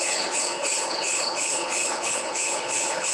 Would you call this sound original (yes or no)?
no